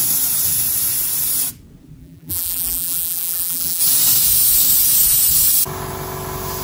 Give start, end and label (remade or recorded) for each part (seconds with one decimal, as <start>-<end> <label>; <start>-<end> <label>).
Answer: 0.0-2.0 recorded; 2.0-3.8 remade; 3.8-6.6 recorded